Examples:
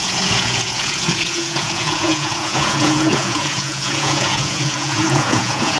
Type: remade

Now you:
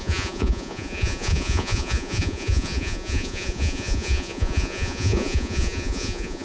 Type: remade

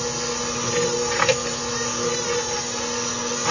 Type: recorded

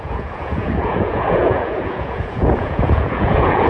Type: remade